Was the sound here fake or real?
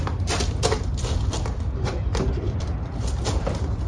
fake